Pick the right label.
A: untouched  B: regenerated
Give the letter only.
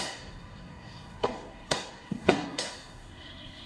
B